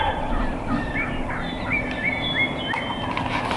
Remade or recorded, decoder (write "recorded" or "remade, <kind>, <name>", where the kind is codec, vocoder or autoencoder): recorded